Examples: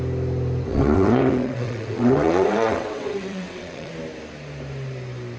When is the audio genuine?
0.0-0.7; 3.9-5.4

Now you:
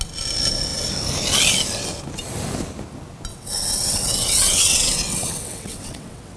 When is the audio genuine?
0.0-3.3

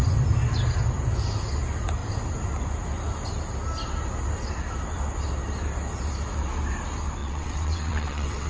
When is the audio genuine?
0.0-7.2

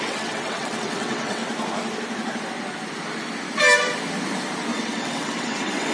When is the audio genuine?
1.4-4.7